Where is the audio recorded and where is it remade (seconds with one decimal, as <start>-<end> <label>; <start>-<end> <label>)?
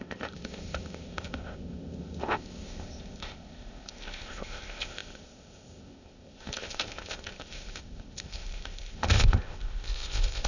0.0-10.5 remade